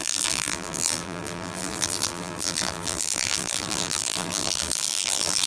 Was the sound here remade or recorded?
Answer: remade